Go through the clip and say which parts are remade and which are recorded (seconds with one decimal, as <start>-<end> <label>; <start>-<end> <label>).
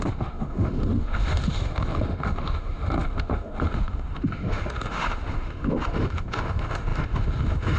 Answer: 0.0-7.8 remade